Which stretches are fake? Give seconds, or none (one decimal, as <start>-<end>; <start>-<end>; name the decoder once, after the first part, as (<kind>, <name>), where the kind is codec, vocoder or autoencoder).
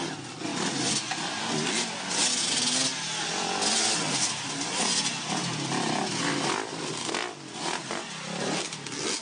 none